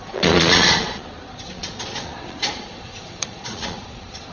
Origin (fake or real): fake